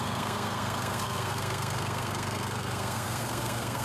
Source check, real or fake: fake